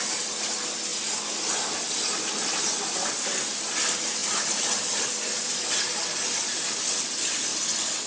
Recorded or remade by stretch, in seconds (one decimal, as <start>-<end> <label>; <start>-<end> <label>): 0.0-8.1 recorded

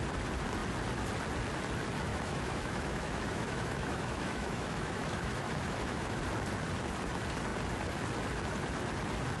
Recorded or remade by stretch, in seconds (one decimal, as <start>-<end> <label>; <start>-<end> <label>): 0.0-2.1 recorded; 2.1-6.2 remade; 6.2-9.4 recorded